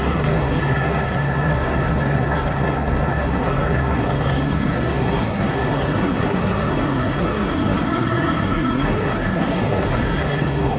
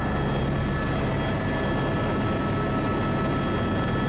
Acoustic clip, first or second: second